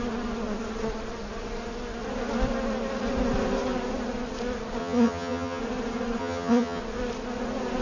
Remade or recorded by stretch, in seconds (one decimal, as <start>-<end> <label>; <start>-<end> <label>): 0.0-4.8 recorded; 4.8-5.6 remade; 5.6-6.2 recorded; 6.2-6.8 remade; 6.8-7.8 recorded